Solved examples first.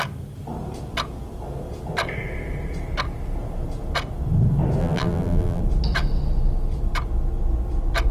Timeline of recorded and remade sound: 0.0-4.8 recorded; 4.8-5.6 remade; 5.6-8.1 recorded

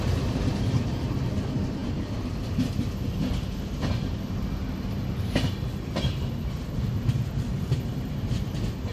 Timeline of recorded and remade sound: 0.0-8.9 recorded

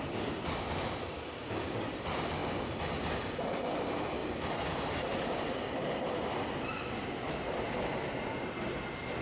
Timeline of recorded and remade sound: 0.0-4.2 recorded; 4.2-6.6 remade; 6.6-9.2 recorded

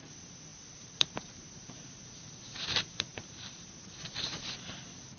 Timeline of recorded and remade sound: 0.0-5.2 remade

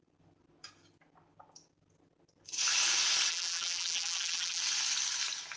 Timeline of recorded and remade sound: 0.0-3.3 recorded; 3.3-4.6 remade; 4.6-5.6 recorded

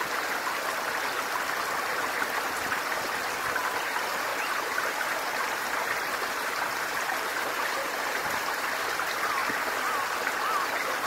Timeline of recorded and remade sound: 0.0-4.3 recorded; 4.3-8.8 remade; 8.8-11.1 recorded